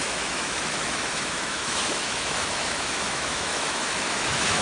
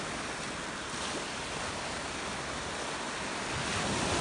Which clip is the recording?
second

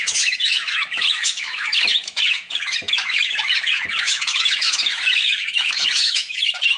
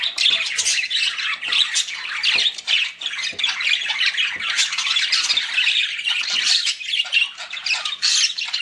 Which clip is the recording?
second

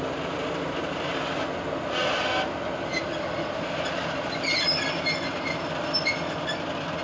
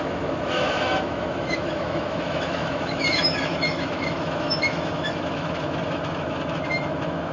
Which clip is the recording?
first